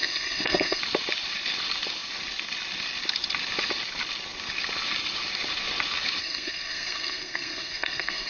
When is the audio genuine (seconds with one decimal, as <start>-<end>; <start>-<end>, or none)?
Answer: 0.8-6.2